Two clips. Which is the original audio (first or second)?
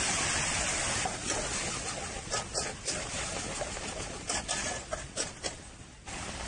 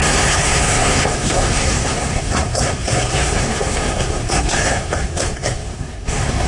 first